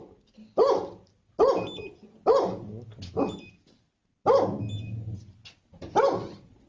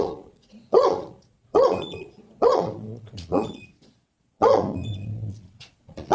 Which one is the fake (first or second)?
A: second